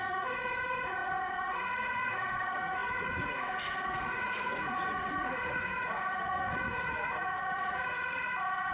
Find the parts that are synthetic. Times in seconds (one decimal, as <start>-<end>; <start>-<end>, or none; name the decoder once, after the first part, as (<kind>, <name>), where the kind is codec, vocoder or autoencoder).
0.0-8.7 (vocoder, Vocos)